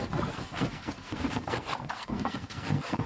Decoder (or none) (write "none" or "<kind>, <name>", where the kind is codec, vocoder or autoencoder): codec, SNAC